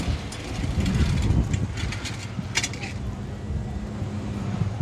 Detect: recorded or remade recorded